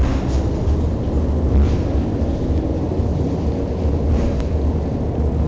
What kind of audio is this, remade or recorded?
recorded